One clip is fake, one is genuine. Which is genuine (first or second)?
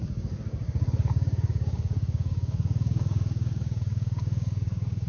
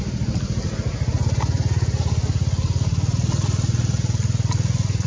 second